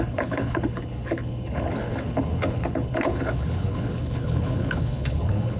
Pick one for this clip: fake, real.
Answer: fake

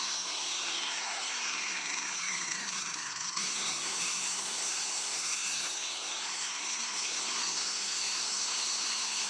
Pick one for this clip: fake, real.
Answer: fake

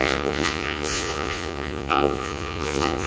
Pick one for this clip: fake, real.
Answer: fake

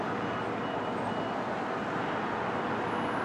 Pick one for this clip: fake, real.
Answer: real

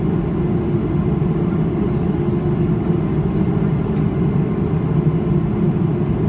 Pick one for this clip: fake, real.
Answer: real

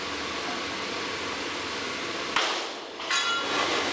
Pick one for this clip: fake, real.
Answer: real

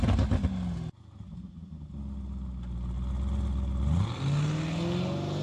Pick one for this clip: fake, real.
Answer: real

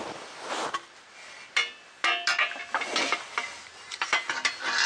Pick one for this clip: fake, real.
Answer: real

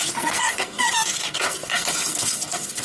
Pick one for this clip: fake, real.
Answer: fake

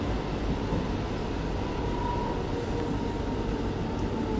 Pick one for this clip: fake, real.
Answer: real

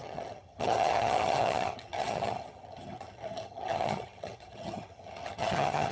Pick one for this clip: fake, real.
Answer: fake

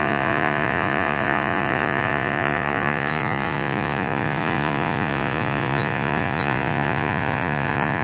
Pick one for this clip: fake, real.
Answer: fake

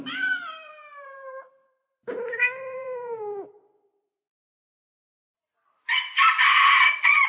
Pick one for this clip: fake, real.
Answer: fake